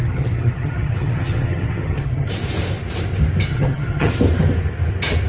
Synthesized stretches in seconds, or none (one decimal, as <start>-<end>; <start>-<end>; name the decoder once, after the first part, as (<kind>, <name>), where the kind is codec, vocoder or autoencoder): 0.0-2.3 (vocoder, HiFi-GAN); 3.5-4.1